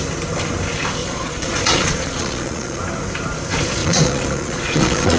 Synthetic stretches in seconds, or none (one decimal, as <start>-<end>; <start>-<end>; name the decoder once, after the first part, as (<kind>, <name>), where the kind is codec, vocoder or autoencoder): 1.0-2.8 (vocoder, Vocos); 3.8-5.2